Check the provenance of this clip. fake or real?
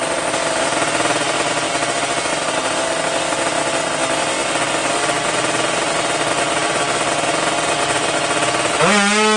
real